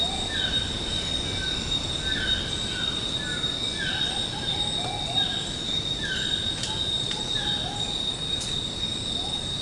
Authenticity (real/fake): real